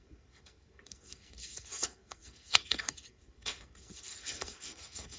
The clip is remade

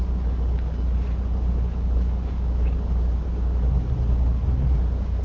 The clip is recorded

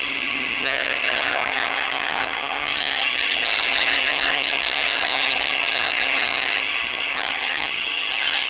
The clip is remade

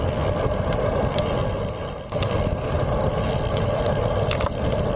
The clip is recorded